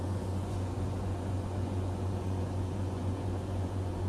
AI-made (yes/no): yes